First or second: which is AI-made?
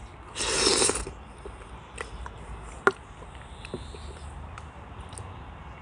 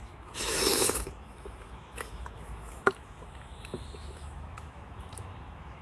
second